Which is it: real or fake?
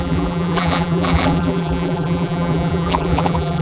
fake